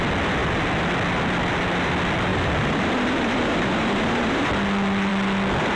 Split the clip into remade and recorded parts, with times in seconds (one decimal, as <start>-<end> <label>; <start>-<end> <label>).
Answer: 0.0-2.3 recorded; 2.3-4.5 remade; 4.5-5.8 recorded